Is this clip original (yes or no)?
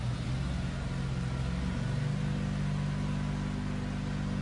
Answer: yes